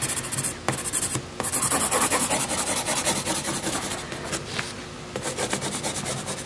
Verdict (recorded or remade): recorded